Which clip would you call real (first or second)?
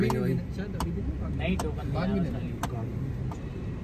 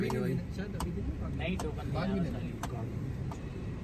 first